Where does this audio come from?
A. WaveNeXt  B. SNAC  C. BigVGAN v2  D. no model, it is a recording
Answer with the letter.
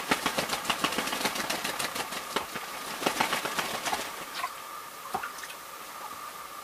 D